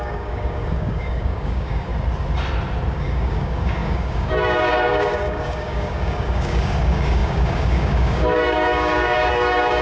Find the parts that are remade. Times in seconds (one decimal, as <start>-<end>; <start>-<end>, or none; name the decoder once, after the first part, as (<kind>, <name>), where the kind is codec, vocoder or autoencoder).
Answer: 0.0-1.9 (codec, DAC); 2.9-9.8